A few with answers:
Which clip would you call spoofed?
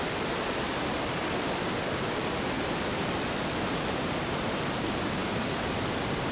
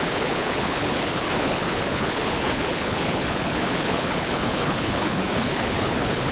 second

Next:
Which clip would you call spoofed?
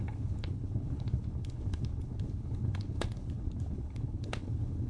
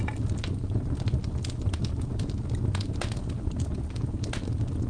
first